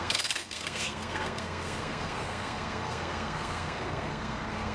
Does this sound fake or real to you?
fake